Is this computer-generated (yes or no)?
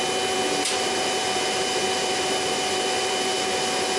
no